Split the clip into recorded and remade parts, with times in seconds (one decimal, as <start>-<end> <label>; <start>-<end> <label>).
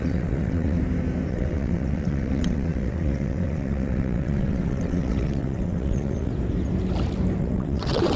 0.0-0.8 remade; 0.8-1.3 recorded; 1.3-6.3 remade; 6.3-7.4 recorded; 7.4-8.2 remade